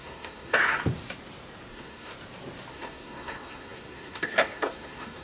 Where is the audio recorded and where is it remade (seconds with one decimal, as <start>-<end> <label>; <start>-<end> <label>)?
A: 0.0-0.8 remade; 0.8-1.7 recorded; 1.7-2.1 remade; 2.1-2.7 recorded; 2.7-5.2 remade